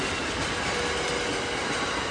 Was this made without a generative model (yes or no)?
yes